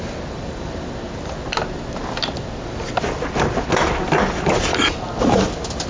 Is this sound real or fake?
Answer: real